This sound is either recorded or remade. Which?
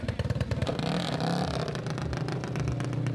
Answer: recorded